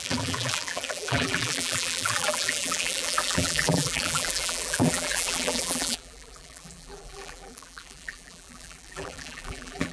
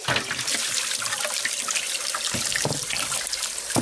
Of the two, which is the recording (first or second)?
second